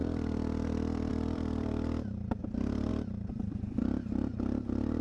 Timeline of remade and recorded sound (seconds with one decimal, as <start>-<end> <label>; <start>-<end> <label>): 0.0-2.4 remade; 2.4-2.9 recorded; 2.9-4.3 remade; 4.3-5.0 recorded